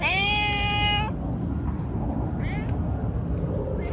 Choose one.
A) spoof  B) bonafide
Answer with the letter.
B